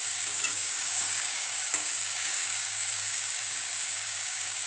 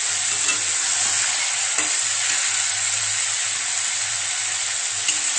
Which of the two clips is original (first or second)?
second